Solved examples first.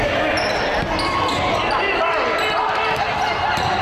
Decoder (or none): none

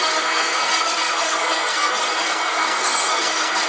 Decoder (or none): codec, SNAC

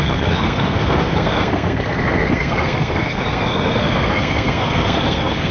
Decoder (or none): codec, SNAC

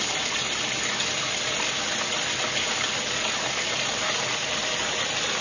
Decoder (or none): none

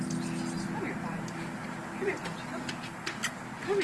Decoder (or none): none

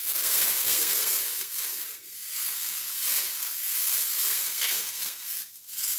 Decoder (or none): codec, SNAC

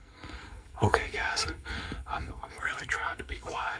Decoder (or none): codec, SNAC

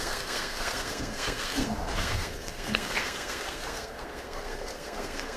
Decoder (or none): codec, SNAC